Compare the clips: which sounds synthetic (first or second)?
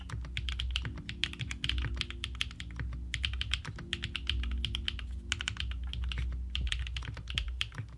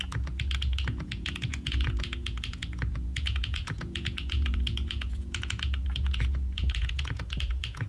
second